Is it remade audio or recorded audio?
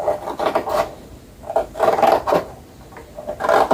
recorded